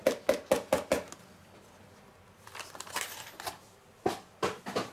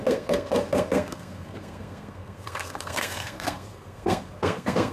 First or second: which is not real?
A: second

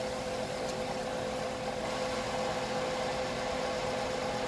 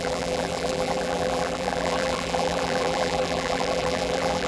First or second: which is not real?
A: second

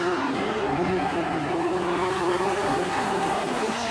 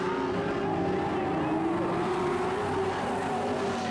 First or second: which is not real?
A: first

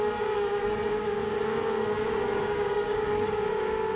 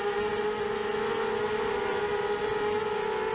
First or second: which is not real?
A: first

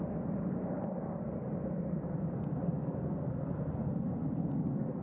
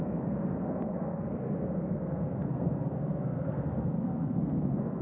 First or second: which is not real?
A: second